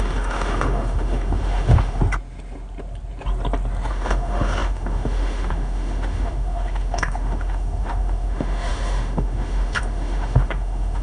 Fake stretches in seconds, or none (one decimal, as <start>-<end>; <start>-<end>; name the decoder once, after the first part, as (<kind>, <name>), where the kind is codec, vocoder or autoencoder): 0.0-2.0 (autoencoder, DAC-VAE); 3.9-11.0